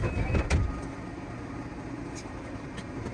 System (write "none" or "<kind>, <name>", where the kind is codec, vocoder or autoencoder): none